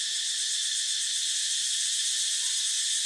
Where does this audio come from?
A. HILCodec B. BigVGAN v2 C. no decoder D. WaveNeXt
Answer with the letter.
C